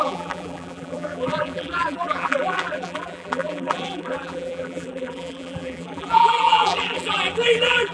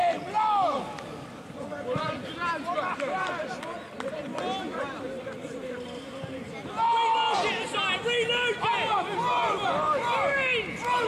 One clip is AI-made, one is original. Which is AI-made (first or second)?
first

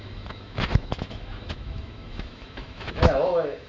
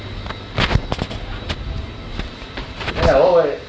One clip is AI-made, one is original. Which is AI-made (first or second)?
first